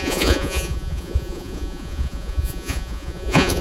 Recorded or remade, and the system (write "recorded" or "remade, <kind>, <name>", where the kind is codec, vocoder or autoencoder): remade, vocoder, Vocos